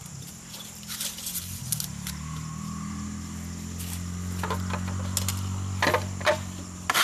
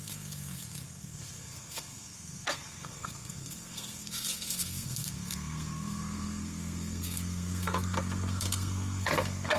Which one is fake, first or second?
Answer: second